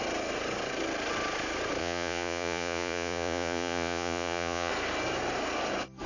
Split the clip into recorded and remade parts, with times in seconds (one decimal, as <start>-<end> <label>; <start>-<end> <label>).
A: 0.0-1.8 recorded; 1.8-4.7 remade; 4.7-6.1 recorded